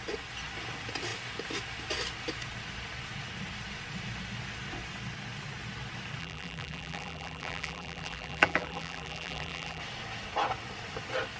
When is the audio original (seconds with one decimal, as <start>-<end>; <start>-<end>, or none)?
0.0-6.2; 9.8-11.4